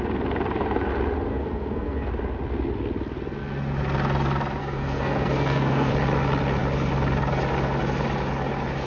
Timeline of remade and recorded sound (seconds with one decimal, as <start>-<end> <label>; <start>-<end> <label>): 0.0-1.3 recorded; 1.3-2.1 remade; 2.1-4.6 recorded; 4.6-5.9 remade; 5.9-8.9 recorded